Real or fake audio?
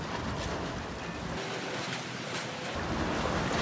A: real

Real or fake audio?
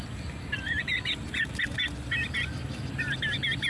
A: real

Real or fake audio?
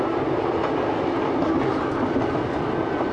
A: real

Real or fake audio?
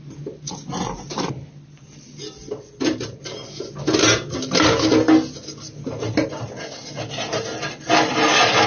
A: real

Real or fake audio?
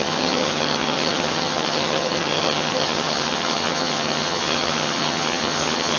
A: fake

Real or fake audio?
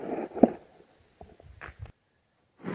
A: real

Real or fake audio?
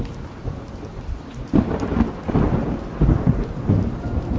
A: real